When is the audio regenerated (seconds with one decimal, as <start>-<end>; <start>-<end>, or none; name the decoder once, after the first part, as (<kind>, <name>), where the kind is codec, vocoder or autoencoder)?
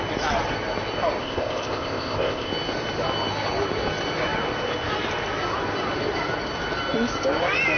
1.2-2.5 (codec, ZipCodec)